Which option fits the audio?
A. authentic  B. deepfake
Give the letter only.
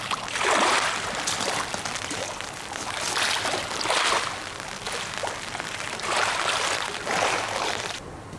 A